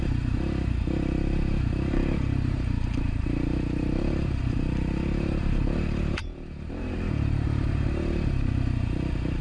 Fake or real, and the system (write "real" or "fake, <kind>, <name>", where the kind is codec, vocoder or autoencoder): fake, vocoder, BigVGAN v2